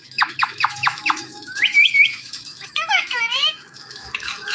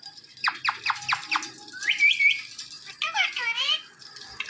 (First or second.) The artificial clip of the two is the first